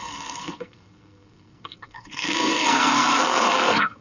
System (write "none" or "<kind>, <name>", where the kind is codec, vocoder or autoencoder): codec, SNAC